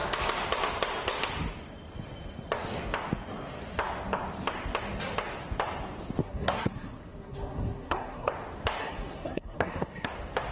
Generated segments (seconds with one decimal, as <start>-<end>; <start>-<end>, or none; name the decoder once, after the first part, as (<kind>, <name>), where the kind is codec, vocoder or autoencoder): 6.2-8.3 (codec, SNAC); 8.8-10.1